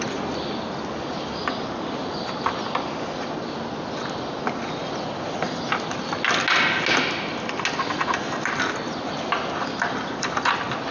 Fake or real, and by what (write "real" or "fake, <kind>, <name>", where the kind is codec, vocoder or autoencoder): real